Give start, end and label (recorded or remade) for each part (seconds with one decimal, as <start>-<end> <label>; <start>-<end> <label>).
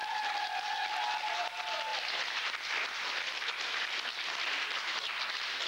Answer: 0.0-5.7 recorded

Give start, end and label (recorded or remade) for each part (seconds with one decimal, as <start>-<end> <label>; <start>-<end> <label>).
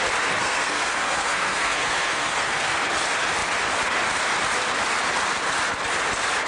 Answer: 0.0-0.4 recorded; 0.4-2.8 remade; 2.8-6.5 recorded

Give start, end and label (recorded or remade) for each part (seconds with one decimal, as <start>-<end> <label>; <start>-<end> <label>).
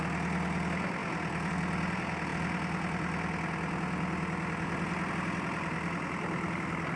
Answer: 0.0-7.0 recorded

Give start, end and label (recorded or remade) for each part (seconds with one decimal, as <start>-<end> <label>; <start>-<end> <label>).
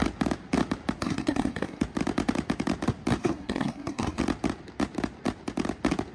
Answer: 0.0-1.0 recorded; 1.0-1.8 remade; 1.8-3.2 recorded; 3.2-4.2 remade; 4.2-6.1 recorded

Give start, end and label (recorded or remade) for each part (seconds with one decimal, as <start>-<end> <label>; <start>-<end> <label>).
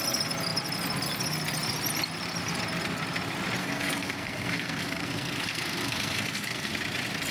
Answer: 0.0-3.6 recorded; 3.6-6.7 remade; 6.7-7.3 recorded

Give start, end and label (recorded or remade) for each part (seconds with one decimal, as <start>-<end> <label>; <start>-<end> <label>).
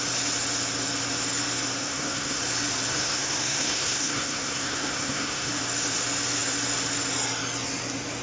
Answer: 0.0-1.8 recorded; 1.8-2.4 remade; 2.4-2.9 recorded; 2.9-5.5 remade; 5.5-8.2 recorded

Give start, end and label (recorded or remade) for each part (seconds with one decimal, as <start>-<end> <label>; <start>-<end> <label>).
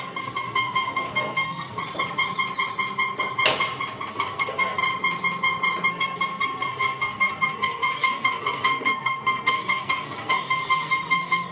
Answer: 0.0-1.8 remade; 1.8-4.1 recorded; 4.1-4.8 remade; 4.8-5.9 recorded; 5.9-11.5 remade